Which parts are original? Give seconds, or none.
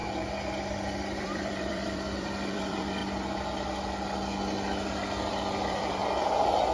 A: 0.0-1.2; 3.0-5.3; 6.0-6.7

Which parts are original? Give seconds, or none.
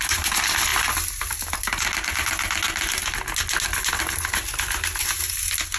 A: 0.0-5.8